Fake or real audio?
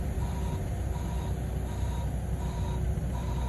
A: real